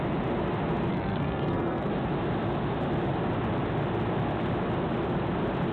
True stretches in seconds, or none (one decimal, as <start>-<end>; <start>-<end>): 0.0-0.9; 1.9-5.7